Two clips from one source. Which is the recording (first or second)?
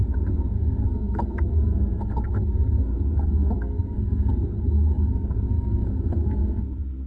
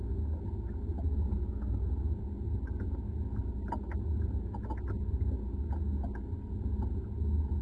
second